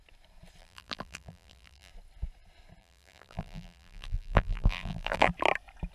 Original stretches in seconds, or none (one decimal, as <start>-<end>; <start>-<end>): 0.0-0.6; 1.9-2.8; 5.3-5.9